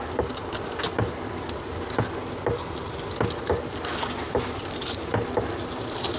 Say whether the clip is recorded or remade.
recorded